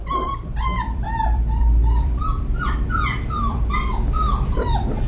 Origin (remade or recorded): remade